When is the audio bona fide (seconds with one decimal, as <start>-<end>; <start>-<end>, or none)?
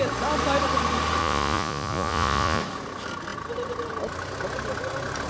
0.0-1.2; 2.6-5.3